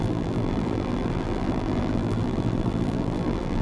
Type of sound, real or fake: fake